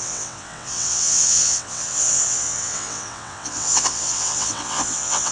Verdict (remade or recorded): remade